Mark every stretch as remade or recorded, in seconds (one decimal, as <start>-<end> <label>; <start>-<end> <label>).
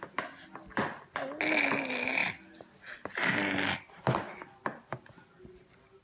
0.0-6.0 recorded